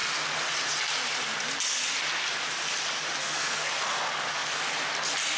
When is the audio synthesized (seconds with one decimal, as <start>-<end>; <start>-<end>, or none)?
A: 3.2-3.7